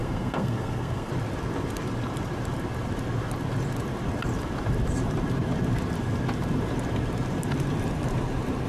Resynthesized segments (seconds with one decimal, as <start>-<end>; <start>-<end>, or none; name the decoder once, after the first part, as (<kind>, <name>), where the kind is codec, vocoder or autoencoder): 0.0-1.1 (codec, SNAC)

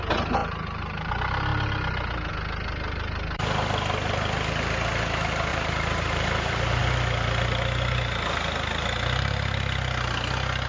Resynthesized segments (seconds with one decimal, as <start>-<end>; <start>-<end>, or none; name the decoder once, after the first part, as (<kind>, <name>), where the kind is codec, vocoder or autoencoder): 0.4-1.1 (vocoder, BigVGAN v2); 5.5-6.8